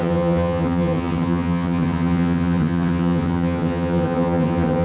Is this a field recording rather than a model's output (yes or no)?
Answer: no